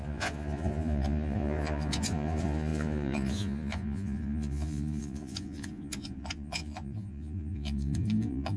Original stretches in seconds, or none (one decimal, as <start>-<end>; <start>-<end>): none